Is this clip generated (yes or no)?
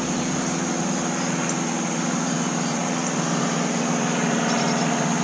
no